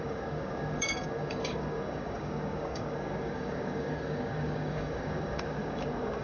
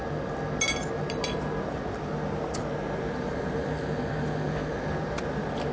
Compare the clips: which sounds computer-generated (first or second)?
first